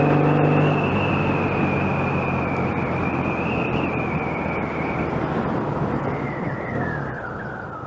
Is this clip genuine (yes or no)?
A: yes